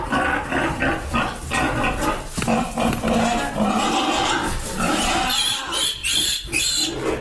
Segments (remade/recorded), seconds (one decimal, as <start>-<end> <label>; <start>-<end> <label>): 0.0-4.4 recorded; 4.4-5.1 remade; 5.1-6.0 recorded; 6.0-6.6 remade; 6.6-7.2 recorded